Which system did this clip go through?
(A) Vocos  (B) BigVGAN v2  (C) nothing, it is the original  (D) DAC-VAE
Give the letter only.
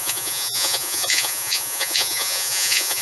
A